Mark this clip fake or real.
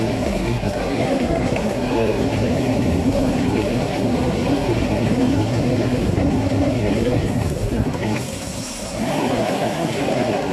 fake